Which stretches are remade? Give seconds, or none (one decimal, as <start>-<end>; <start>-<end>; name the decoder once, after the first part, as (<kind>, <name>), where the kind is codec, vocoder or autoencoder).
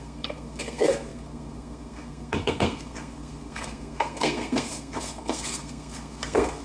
0.0-6.6 (codec, SNAC)